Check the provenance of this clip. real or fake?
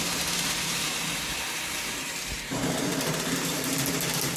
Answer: fake